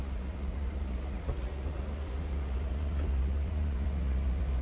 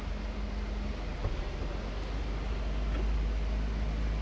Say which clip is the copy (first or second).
first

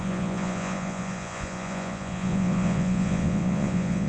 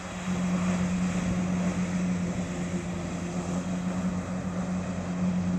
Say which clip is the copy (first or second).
first